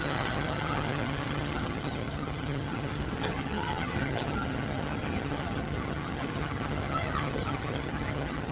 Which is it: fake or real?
fake